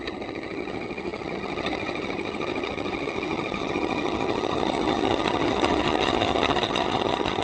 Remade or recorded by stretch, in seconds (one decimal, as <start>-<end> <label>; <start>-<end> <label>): 0.0-7.4 remade